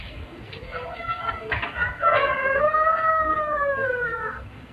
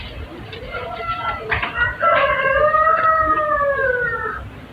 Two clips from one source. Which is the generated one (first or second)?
first